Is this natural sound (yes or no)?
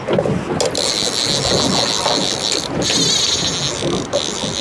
yes